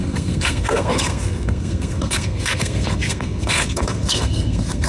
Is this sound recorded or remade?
remade